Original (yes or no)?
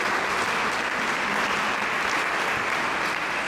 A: yes